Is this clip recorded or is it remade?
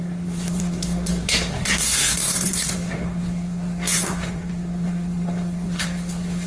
remade